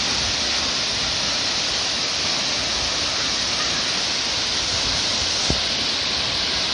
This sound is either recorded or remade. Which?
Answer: recorded